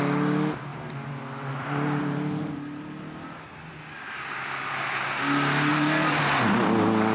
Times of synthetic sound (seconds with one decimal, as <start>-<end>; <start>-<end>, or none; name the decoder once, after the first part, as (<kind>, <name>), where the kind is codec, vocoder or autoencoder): 0.7-2.0 (vocoder, BigVGAN v2); 5.7-6.2